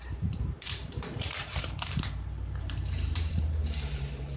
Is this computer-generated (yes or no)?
yes